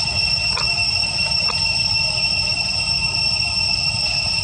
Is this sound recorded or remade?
remade